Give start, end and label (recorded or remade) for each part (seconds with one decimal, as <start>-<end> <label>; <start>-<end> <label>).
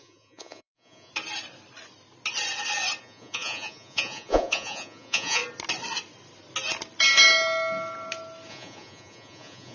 0.0-1.1 remade; 1.1-3.0 recorded; 3.0-5.4 remade; 5.4-8.5 recorded; 8.5-9.7 remade